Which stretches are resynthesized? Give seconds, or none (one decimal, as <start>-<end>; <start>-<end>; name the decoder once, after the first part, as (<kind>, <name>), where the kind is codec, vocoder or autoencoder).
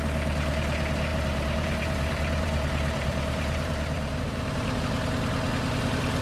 1.1-4.8 (vocoder, BigVGAN v2)